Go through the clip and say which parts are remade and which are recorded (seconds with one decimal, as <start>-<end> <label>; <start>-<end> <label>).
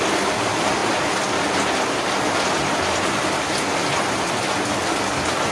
0.0-5.5 recorded